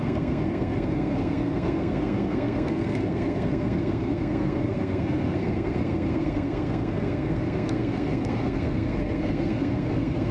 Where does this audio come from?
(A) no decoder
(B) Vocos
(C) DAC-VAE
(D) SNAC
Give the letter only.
D